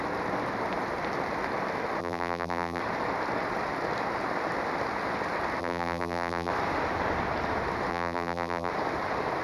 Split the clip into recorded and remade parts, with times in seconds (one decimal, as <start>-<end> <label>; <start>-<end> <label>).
0.0-2.0 recorded; 2.0-2.8 remade; 2.8-5.6 recorded; 5.6-6.5 remade; 6.5-7.9 recorded; 7.9-8.7 remade; 8.7-9.4 recorded